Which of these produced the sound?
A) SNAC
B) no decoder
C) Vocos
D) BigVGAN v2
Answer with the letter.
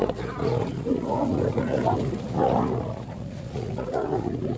C